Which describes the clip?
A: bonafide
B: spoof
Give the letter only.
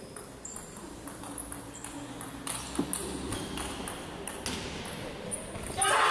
A